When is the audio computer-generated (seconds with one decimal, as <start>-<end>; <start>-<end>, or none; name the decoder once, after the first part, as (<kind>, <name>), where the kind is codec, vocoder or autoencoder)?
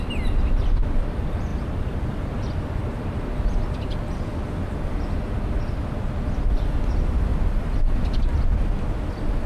1.5-3.4 (vocoder, BigVGAN v2); 7.3-8.7